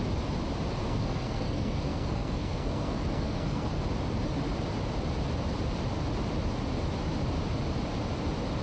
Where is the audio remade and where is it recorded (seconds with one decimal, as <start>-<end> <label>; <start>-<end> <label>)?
0.0-0.8 recorded; 0.8-3.8 remade; 3.8-8.6 recorded